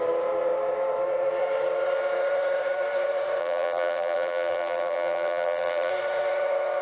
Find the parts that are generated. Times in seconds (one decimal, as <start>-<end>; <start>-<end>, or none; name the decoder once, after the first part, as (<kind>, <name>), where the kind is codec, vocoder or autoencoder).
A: 3.4-5.9 (vocoder, BigVGAN v2)

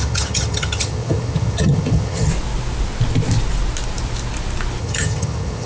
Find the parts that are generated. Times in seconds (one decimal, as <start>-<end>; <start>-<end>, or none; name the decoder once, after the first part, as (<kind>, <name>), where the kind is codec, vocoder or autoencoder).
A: 0.0-2.3 (vocoder, HiFi-GAN); 4.8-5.7

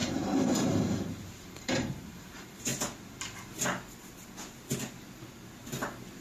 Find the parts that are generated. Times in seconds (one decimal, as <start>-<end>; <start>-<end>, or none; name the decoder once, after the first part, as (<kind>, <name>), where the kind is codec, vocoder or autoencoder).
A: 0.0-2.7 (vocoder, BigVGAN v2)

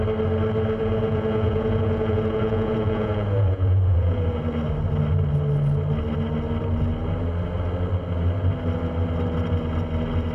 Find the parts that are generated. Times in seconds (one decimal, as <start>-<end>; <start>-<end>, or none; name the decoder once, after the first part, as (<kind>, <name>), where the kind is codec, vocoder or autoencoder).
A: 0.8-4.4 (vocoder, Vocos)

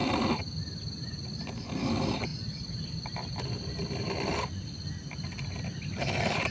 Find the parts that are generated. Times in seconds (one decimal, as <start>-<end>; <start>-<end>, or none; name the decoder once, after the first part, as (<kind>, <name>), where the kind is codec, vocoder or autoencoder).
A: none

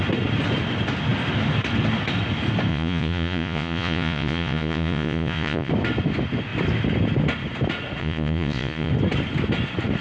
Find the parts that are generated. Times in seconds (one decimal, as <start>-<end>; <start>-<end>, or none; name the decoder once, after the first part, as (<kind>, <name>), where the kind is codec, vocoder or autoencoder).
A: 2.7-5.7 (vocoder, Vocos); 8.0-8.9

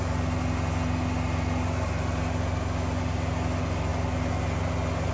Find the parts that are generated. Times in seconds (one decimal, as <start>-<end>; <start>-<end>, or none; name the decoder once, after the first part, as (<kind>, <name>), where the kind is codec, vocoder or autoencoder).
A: none